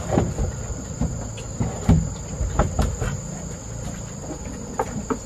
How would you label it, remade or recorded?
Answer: remade